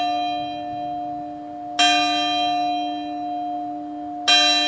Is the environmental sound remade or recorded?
recorded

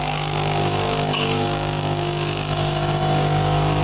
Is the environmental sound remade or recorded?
remade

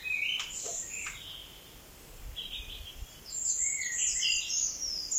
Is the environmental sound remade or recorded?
remade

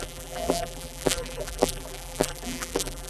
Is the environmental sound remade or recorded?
remade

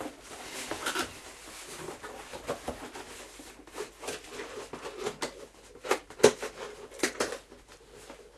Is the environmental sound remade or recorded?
recorded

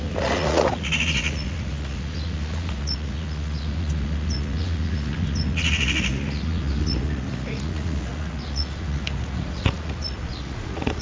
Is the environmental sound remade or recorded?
remade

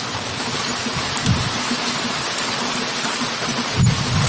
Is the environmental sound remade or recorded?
recorded